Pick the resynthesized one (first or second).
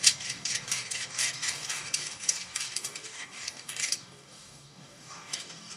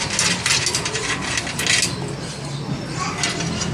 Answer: first